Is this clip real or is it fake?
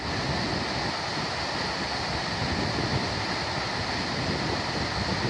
real